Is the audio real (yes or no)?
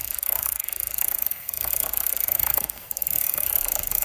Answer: no